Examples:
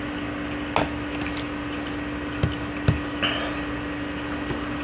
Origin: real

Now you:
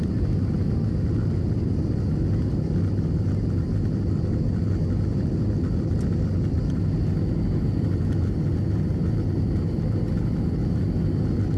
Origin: real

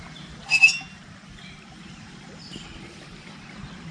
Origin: fake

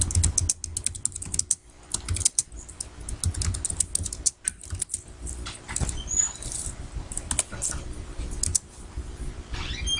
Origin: real